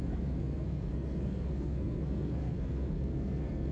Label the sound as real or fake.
fake